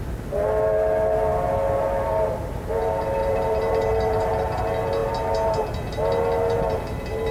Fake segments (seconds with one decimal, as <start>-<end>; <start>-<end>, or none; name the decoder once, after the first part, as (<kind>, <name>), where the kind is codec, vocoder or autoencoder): 3.2-4.6 (vocoder, BigVGAN v2)